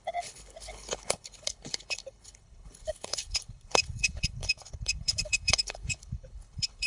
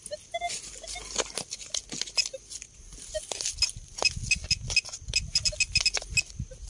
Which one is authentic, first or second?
second